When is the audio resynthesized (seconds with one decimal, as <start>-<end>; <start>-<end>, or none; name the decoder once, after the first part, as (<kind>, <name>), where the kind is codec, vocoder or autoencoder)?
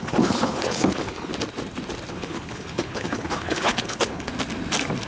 0.0-1.3 (codec, HILCodec); 2.1-4.3